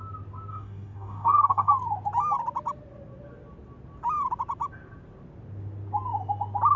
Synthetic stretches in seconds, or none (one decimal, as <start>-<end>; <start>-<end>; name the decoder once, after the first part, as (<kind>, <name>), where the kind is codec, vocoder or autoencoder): 0.5-1.7 (codec, DAC)